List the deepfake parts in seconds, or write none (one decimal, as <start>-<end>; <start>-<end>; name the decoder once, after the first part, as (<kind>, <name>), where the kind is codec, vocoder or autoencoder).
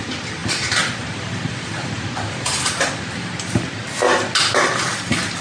0.4-2.9 (vocoder, BigVGAN v2)